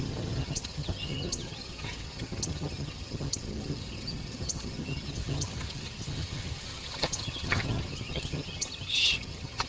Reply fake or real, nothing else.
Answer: fake